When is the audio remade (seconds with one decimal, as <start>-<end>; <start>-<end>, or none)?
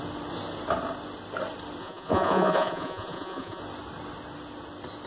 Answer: 1.8-3.6